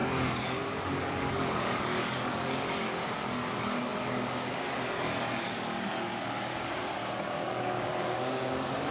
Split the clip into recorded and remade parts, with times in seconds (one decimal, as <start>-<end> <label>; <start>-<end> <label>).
0.0-8.9 remade